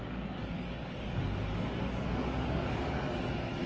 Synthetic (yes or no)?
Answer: yes